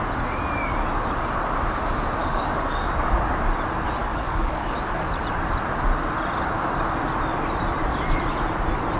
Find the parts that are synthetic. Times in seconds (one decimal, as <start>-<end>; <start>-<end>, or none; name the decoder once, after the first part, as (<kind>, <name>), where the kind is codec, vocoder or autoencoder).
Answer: 2.2-2.9 (codec, DAC); 4.0-4.8